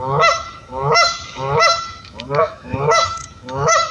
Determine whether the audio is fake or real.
fake